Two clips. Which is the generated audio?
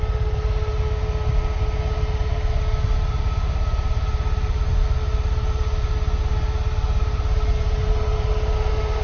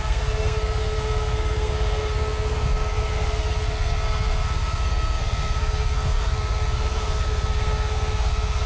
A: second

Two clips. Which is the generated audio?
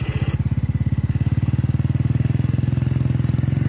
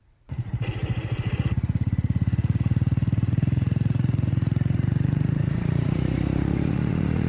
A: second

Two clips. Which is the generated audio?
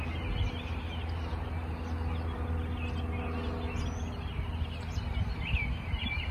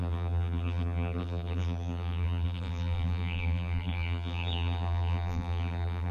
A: second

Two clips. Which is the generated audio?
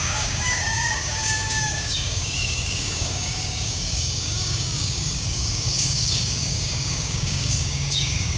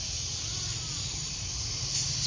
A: first